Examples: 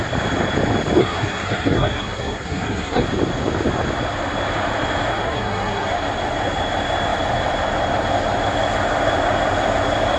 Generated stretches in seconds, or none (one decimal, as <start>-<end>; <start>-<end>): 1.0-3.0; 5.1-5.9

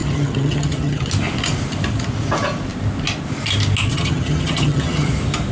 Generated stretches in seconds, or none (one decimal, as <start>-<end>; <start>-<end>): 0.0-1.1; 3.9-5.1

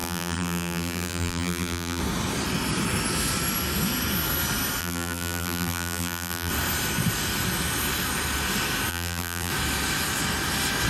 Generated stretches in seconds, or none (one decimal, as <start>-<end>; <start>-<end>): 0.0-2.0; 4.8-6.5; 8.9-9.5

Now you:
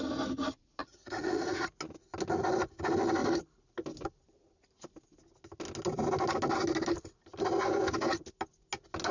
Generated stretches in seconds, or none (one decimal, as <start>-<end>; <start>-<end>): 0.8-1.8